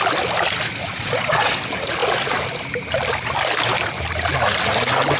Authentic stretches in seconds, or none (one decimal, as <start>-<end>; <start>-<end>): 0.0-0.8; 1.5-5.2